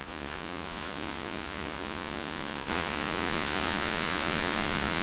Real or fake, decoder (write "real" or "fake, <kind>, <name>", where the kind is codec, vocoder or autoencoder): fake, vocoder, Vocos